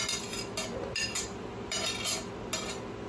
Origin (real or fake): real